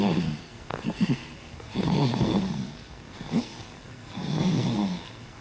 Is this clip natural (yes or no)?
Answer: no